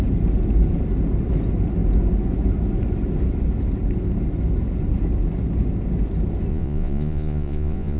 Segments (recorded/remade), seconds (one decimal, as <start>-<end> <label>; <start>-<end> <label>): 0.0-6.5 recorded; 6.5-8.0 remade